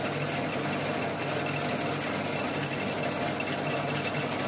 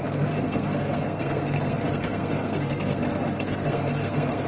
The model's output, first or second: second